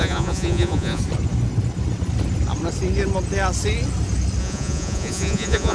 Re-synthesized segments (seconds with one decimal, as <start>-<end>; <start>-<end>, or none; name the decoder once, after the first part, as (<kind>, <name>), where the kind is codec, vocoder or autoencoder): 0.0-1.0 (vocoder, Vocos); 4.4-5.7